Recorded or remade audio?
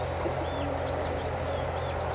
recorded